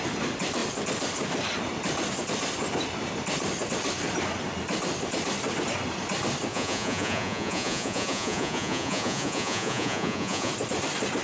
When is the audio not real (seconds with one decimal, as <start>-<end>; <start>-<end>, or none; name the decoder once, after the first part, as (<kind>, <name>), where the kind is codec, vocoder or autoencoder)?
6.5-10.5 (vocoder, Vocos)